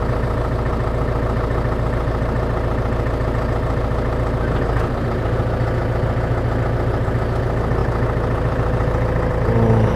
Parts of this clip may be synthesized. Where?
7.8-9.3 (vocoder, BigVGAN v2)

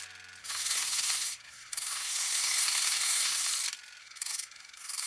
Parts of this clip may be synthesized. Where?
0.4-3.5 (codec, SNAC); 4.0-5.1